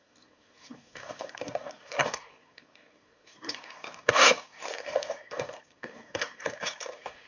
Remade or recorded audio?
remade